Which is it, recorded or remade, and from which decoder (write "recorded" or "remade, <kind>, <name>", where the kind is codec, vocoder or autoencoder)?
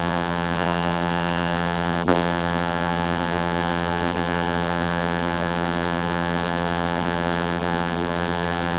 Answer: remade, vocoder, BigVGAN v2